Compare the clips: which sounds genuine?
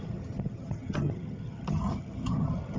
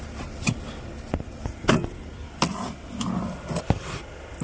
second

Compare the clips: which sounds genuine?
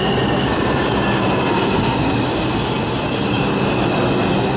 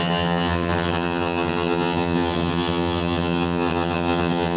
first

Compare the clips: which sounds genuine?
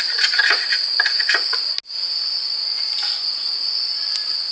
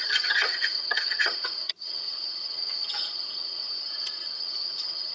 first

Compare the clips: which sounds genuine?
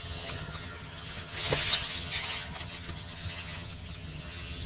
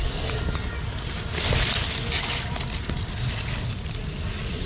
second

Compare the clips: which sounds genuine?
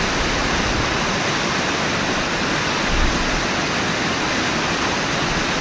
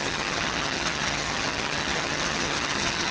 first